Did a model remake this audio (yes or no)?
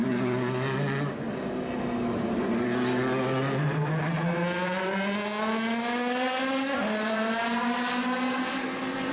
no